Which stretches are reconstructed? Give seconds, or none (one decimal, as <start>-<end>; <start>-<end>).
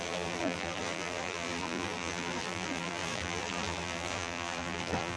0.0-5.2